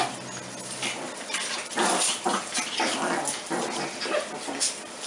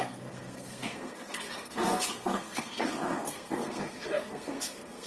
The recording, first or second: first